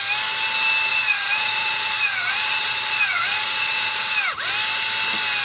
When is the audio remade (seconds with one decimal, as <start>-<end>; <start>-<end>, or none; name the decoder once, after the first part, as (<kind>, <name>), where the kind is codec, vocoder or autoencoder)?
0.9-4.1 (vocoder, Vocos)